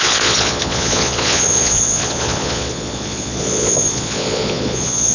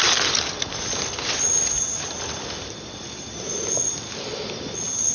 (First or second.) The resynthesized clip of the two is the first